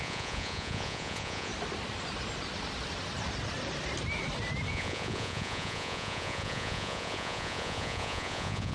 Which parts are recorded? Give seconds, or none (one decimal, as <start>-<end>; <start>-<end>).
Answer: 1.5-4.7